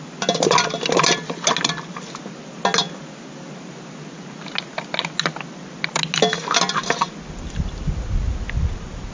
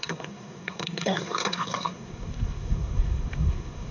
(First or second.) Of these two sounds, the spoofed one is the second